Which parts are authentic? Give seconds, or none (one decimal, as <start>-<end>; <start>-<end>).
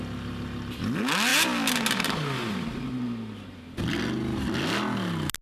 0.0-5.4